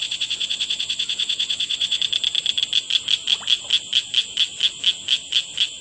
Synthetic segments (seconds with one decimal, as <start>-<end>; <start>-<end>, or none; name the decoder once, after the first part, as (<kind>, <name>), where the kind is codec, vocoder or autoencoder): 0.0-2.0 (vocoder, WaveNeXt)